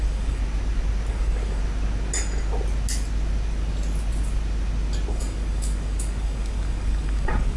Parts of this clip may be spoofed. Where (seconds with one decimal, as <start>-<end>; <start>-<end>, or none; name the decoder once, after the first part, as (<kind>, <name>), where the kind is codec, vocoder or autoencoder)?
0.0-0.4 (codec, DAC); 1.1-1.6; 5.1-7.6